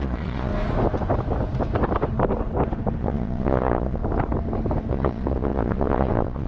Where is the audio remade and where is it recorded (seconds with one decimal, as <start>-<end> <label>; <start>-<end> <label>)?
0.0-0.5 remade; 0.5-3.0 recorded; 3.0-4.0 remade; 4.0-4.9 recorded; 4.9-6.5 remade